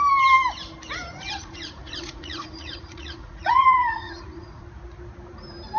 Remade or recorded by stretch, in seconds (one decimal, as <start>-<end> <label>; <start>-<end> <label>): 0.0-1.1 recorded; 1.1-4.6 remade; 4.6-5.8 recorded